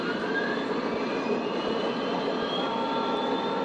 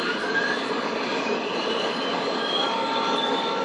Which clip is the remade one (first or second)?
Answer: second